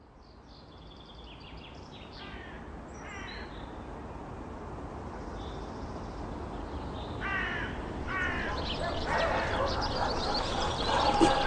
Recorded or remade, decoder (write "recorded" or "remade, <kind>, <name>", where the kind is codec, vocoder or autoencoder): recorded